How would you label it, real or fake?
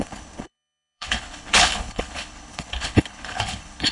fake